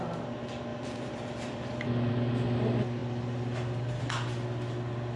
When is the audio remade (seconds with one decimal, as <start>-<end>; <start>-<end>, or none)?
0.7-2.1; 3.0-4.0